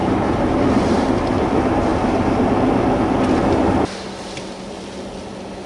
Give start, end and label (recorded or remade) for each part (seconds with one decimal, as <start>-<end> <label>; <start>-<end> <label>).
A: 0.0-1.2 remade; 1.2-5.7 recorded